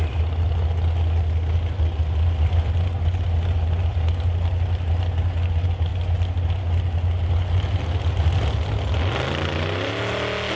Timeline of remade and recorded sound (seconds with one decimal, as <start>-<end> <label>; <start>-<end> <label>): 0.0-10.6 recorded